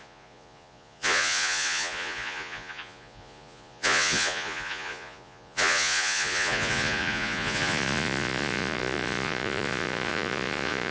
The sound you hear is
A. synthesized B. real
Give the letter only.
A